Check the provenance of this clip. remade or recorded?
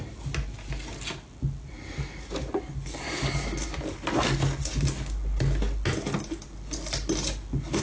recorded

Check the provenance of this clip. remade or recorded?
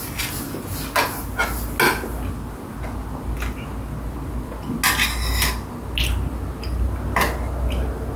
recorded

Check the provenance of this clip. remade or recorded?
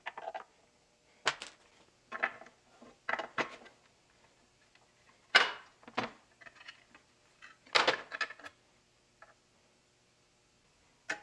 recorded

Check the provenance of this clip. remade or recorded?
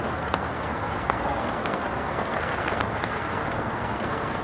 remade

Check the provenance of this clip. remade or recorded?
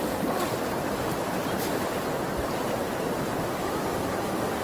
recorded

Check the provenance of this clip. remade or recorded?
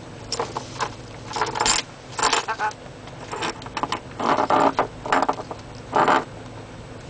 recorded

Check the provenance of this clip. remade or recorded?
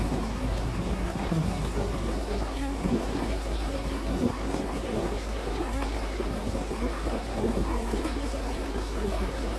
remade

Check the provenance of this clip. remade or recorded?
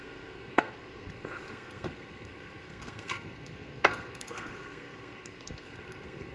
remade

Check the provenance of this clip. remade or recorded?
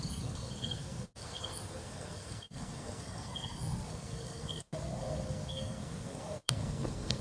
remade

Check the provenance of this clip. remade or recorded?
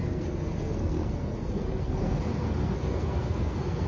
remade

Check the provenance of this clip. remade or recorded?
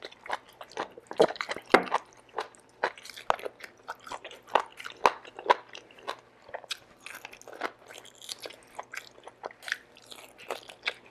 recorded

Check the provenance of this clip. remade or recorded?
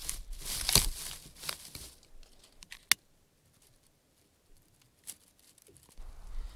recorded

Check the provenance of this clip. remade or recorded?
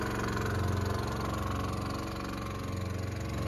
recorded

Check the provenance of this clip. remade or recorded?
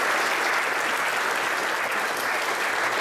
recorded